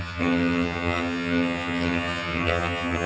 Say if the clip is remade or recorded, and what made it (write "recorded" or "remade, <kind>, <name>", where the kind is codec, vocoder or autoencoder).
remade, vocoder, HiFi-GAN